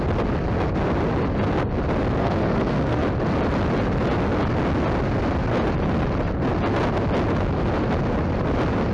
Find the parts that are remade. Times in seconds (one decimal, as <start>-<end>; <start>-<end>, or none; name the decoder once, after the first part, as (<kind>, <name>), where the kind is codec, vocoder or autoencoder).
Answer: 2.2-3.0 (codec, SNAC)